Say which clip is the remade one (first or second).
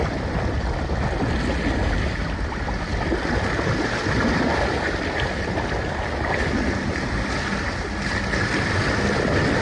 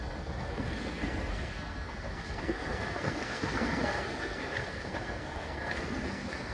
second